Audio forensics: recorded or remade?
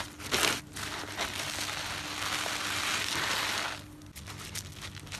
recorded